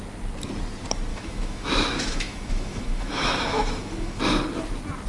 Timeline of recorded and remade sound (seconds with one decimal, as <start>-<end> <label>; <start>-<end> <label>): 0.0-1.1 recorded; 1.1-4.2 remade; 4.2-5.1 recorded